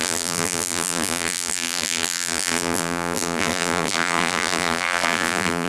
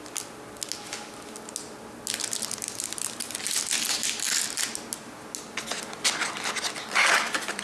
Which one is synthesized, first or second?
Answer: first